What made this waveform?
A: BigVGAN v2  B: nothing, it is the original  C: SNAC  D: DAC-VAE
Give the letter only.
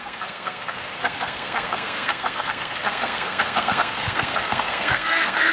C